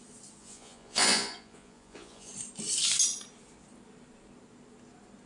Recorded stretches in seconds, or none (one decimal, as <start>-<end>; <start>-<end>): 0.0-0.4; 2.3-5.3